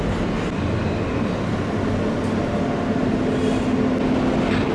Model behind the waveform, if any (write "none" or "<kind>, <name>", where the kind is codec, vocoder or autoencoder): none